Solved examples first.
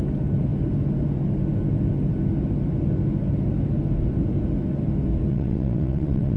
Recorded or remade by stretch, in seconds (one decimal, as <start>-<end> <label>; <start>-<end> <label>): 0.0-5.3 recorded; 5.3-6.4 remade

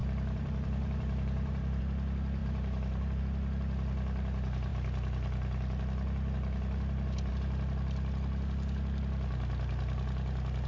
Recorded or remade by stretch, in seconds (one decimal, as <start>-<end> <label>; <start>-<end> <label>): 0.0-1.8 remade; 1.8-2.4 recorded; 2.4-3.2 remade; 3.2-10.7 recorded

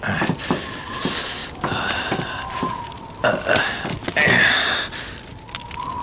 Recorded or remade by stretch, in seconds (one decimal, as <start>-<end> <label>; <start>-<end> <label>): 0.0-6.0 recorded

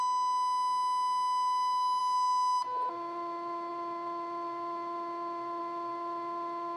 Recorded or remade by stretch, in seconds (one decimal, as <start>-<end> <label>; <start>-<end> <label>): 0.0-6.8 recorded

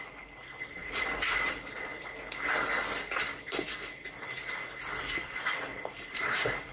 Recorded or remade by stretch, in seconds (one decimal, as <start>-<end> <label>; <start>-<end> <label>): 0.0-0.8 recorded; 0.8-1.5 remade; 1.5-5.7 recorded; 5.7-6.7 remade

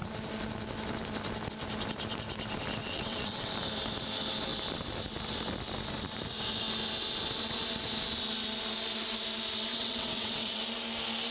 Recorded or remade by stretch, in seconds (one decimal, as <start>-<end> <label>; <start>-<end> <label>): 0.0-2.8 recorded; 2.8-3.5 remade; 3.5-9.7 recorded; 9.7-10.6 remade; 10.6-11.3 recorded

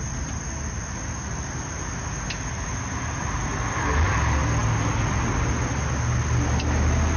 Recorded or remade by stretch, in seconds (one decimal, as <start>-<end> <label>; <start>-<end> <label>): 0.0-7.2 recorded

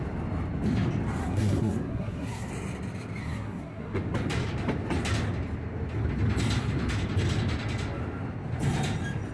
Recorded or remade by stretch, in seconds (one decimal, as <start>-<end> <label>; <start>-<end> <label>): 0.0-1.2 recorded; 1.2-2.5 remade; 2.5-3.2 recorded; 3.2-4.0 remade; 4.0-9.3 recorded